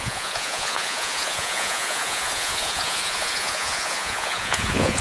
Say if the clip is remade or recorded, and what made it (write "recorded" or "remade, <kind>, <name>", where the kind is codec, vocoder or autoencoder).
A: remade, vocoder, Vocos